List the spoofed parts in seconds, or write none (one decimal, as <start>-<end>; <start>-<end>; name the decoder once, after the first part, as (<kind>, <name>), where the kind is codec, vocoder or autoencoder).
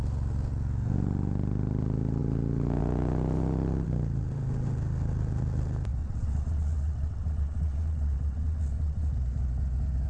6.0-9.1 (vocoder, WaveNeXt)